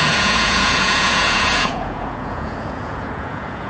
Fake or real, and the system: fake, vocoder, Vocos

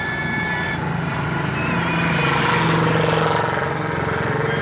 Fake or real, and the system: real